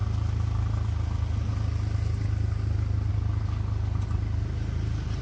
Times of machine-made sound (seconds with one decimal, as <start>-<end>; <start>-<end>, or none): none